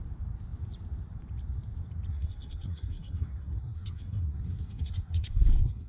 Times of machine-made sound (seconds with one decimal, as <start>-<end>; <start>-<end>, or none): 2.1-5.9